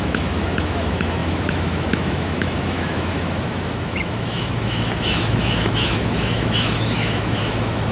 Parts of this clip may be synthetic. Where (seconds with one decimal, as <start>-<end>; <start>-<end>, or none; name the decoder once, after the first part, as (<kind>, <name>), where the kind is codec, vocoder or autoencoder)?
0.0-7.9 (autoencoder, DAC-VAE)